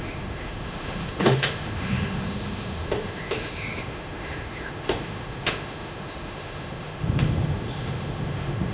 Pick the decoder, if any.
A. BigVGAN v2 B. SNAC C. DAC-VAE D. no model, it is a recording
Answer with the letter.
C